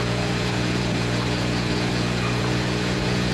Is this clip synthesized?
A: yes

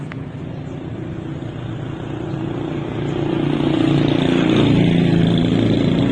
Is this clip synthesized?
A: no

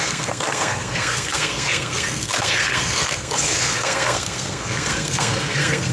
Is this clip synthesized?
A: yes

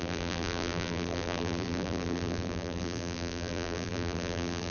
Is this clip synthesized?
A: yes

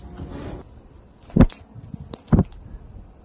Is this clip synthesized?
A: no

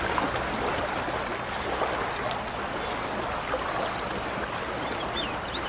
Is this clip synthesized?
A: no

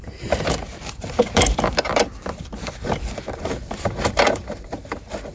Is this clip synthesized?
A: yes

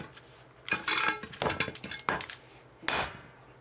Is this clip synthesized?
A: no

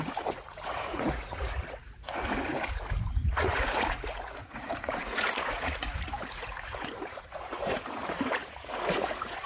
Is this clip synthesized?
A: yes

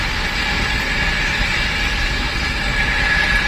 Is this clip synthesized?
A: no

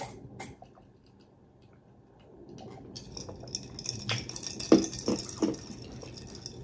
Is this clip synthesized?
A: no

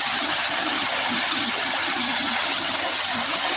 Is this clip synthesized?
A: yes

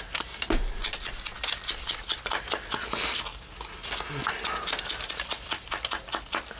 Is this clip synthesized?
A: no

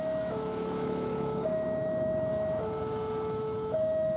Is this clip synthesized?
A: yes